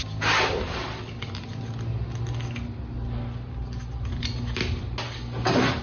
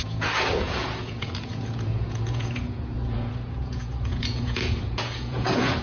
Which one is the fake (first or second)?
second